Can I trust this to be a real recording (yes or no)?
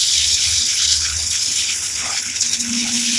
no